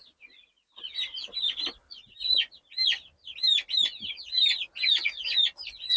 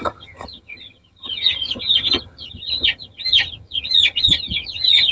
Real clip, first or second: first